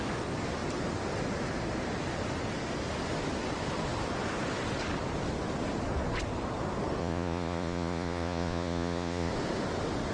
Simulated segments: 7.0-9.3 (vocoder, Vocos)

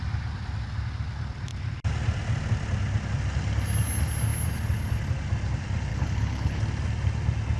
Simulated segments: 5.9-6.6 (codec, HILCodec)

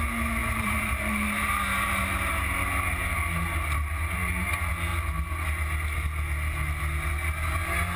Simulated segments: 0.4-2.0 (vocoder, BigVGAN v2)